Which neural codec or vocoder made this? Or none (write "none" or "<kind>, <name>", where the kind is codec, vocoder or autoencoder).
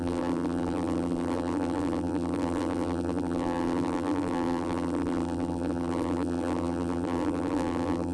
vocoder, BigVGAN v2